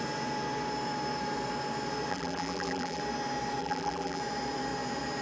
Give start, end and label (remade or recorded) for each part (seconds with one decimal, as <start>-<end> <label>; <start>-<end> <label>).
0.0-2.1 recorded; 2.1-3.0 remade; 3.0-3.6 recorded; 3.6-4.2 remade; 4.2-5.2 recorded